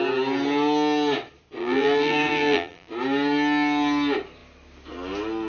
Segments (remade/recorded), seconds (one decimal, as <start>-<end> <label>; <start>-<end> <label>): 0.0-1.6 recorded; 1.6-2.9 remade; 2.9-5.5 recorded